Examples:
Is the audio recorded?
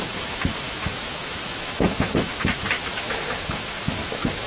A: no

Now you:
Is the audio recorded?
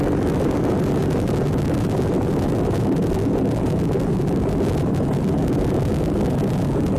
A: yes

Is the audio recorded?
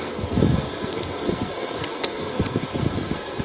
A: no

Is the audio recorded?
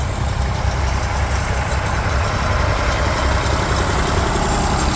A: yes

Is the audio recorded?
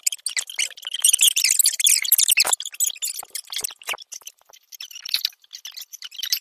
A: yes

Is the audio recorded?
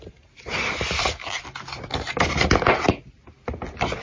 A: yes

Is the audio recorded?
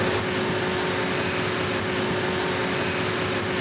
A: yes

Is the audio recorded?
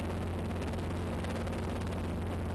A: yes